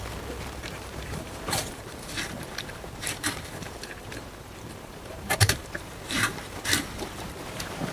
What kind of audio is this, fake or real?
fake